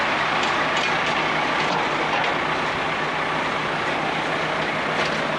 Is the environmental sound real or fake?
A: real